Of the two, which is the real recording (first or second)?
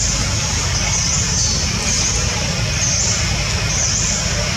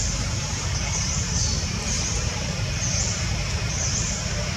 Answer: first